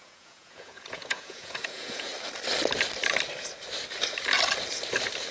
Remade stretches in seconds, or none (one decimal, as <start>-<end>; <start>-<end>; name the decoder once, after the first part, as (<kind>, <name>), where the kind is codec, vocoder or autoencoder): 0.0-2.1 (vocoder, Vocos)